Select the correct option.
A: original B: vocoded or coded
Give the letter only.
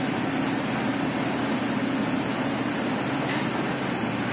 A